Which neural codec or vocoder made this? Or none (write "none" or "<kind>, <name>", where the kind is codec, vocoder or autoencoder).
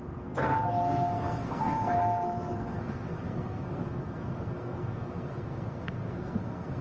codec, SNAC